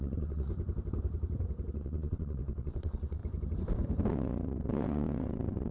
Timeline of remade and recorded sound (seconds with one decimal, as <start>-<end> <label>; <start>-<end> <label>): 0.0-0.5 remade; 0.5-1.7 recorded; 1.7-3.2 remade; 3.2-4.1 recorded; 4.1-5.7 remade